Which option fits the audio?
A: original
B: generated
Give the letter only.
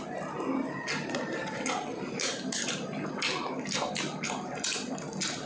A